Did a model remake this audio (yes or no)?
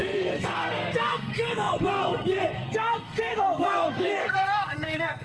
yes